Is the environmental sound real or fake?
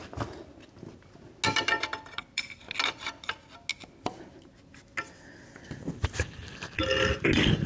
real